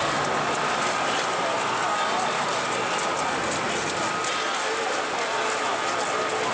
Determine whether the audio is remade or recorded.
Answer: recorded